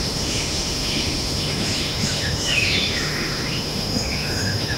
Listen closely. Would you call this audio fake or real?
fake